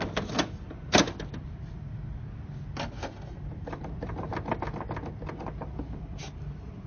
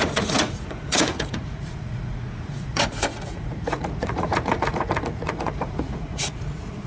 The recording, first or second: first